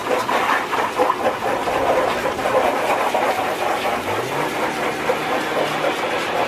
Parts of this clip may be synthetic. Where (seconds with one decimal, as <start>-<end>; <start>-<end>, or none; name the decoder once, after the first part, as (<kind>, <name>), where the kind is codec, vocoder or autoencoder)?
none